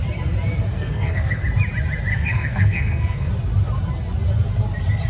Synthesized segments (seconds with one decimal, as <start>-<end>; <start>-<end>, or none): 0.7-1.4; 2.1-3.3